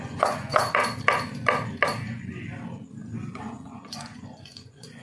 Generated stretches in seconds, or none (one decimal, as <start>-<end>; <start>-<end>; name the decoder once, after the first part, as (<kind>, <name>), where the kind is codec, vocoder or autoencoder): 0.0-0.8 (vocoder, Vocos); 3.4-5.0